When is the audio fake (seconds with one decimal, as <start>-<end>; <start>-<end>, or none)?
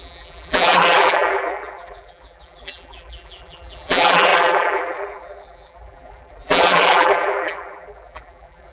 0.0-8.7